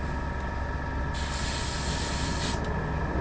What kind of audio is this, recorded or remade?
recorded